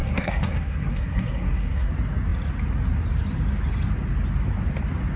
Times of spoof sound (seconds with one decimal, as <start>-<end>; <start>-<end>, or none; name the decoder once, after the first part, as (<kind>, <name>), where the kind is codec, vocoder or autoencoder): 0.0-1.9 (codec, SNAC)

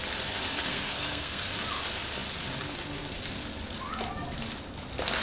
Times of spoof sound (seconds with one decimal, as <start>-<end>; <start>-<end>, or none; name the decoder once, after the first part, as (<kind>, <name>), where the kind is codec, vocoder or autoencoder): 0.7-1.5 (codec, SNAC)

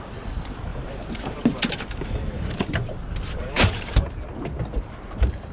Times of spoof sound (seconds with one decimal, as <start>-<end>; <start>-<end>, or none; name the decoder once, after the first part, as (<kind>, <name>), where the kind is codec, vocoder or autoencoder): 0.7-4.0 (vocoder, BigVGAN v2)

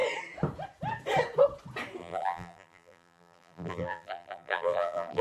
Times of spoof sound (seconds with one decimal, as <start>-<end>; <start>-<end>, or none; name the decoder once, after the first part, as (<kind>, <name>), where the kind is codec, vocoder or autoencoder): 2.0-5.2 (vocoder, BigVGAN v2)

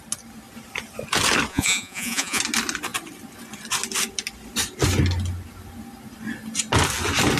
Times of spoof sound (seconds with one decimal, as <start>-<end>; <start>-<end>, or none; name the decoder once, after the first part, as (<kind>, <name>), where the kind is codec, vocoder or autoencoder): 1.5-2.4 (vocoder, Vocos)